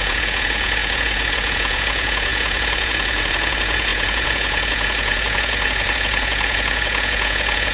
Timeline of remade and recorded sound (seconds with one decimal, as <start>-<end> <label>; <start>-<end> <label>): 0.0-7.7 remade